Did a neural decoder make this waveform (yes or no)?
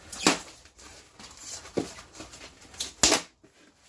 no